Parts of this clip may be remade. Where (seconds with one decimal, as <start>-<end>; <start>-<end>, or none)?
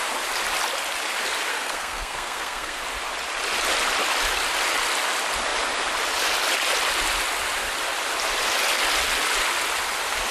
1.5-2.8